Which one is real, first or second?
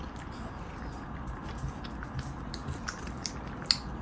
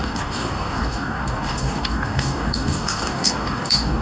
first